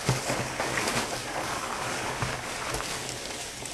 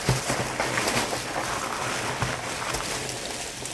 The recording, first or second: second